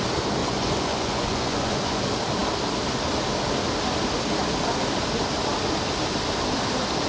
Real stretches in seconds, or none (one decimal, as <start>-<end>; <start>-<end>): 0.0-0.4; 2.0-7.1